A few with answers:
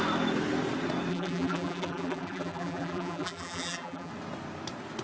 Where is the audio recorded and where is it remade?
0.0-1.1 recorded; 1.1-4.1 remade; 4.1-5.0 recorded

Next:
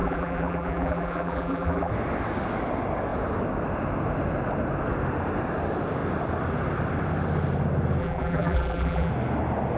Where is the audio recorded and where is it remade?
0.0-1.9 remade; 1.9-8.0 recorded; 8.0-9.1 remade; 9.1-9.8 recorded

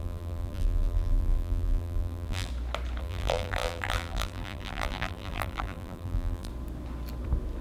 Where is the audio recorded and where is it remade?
0.0-2.5 remade; 2.5-3.0 recorded; 3.0-6.5 remade; 6.5-7.6 recorded

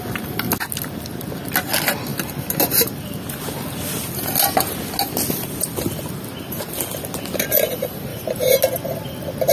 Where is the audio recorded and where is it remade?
0.0-8.1 recorded; 8.1-8.6 remade; 8.6-9.5 recorded